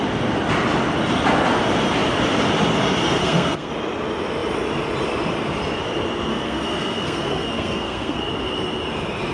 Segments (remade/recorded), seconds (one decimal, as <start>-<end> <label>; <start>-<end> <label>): 0.0-3.2 recorded; 3.2-3.7 remade; 3.7-6.3 recorded; 6.3-8.3 remade; 8.3-9.3 recorded